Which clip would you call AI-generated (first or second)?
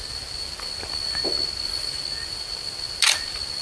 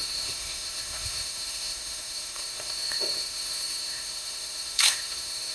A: second